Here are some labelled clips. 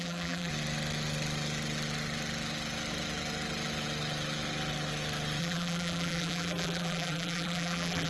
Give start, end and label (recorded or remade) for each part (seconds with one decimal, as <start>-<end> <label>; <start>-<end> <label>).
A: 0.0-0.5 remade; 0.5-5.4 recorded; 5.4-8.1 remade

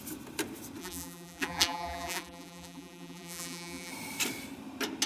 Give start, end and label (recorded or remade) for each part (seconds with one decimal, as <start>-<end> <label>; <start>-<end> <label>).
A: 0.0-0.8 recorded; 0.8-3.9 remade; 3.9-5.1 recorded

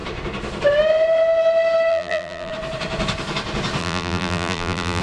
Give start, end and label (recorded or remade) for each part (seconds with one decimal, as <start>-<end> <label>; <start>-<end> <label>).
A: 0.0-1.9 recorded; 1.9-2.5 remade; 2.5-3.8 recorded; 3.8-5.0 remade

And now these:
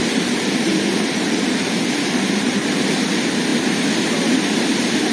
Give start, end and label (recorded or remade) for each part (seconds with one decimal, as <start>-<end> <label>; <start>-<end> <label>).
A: 0.0-2.5 remade; 2.5-5.1 recorded

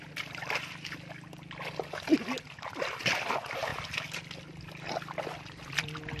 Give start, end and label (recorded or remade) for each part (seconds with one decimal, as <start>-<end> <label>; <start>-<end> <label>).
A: 0.0-6.2 recorded

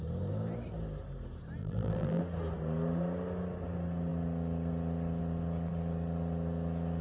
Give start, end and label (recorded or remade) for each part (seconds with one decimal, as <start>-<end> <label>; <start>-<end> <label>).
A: 0.0-1.6 recorded; 1.6-2.2 remade; 2.2-7.0 recorded

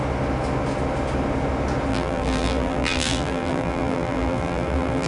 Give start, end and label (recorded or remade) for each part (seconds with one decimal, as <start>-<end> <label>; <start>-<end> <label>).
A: 0.0-1.9 recorded; 1.9-5.1 remade

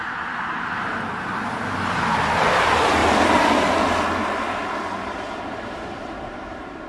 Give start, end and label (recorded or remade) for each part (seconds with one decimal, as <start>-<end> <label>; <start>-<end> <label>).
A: 0.0-3.0 remade; 3.0-5.4 recorded; 5.4-6.9 remade